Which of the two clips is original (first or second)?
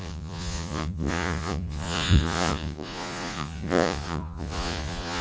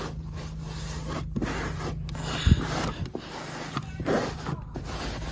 second